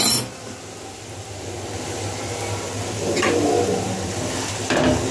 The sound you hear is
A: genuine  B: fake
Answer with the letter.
A